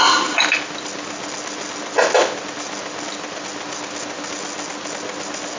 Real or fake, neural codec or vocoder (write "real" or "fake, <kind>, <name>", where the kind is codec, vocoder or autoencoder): real